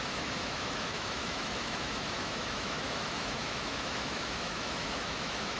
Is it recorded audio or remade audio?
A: remade